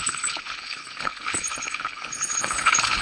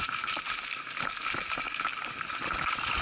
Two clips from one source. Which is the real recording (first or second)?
second